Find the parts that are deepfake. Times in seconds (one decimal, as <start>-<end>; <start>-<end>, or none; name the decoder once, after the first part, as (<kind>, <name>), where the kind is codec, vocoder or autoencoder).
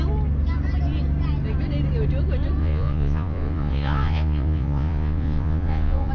2.6-6.1 (vocoder, Vocos)